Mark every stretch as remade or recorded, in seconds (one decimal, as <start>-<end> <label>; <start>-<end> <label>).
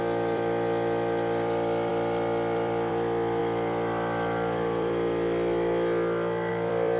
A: 0.0-7.0 remade